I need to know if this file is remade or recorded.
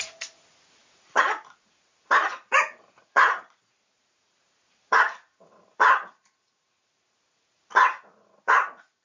remade